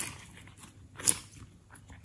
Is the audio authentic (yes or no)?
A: yes